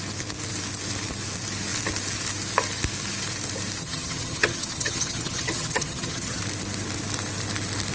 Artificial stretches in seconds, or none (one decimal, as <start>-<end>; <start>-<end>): 3.8-6.4